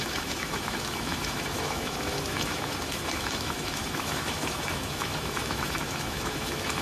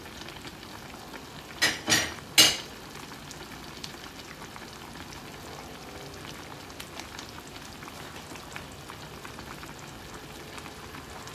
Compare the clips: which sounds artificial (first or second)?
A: first